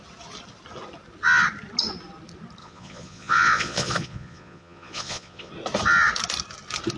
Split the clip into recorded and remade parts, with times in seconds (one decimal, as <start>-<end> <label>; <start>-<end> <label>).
0.0-2.6 recorded; 2.6-5.5 remade; 5.5-7.0 recorded